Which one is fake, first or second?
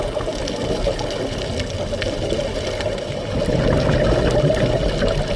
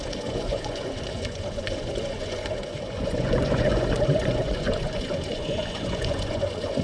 second